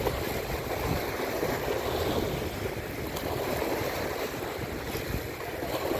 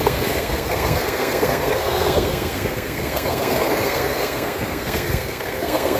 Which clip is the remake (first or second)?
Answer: second